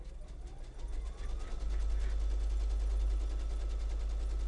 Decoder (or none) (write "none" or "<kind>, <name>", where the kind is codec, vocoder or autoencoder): none